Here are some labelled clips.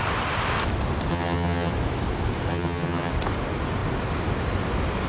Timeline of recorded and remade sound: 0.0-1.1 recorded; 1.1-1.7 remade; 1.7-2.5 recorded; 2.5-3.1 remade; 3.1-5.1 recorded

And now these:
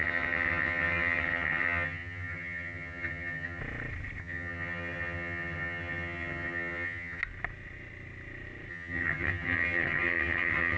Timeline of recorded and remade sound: 0.0-3.6 remade; 3.6-4.2 recorded; 4.2-7.2 remade; 7.2-8.7 recorded; 8.7-10.8 remade

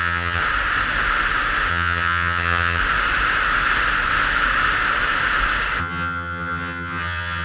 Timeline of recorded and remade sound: 0.0-0.4 remade; 0.4-1.7 recorded; 1.7-2.8 remade; 2.8-5.8 recorded; 5.8-7.4 remade

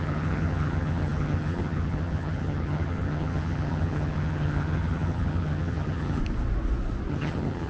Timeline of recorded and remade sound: 0.0-6.2 remade; 6.2-7.1 recorded; 7.1-7.7 remade

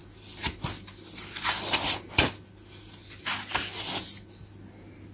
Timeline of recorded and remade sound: 0.0-5.1 recorded

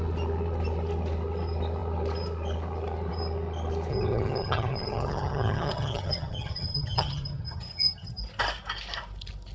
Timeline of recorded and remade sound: 0.0-3.9 recorded; 3.9-8.2 remade; 8.2-9.5 recorded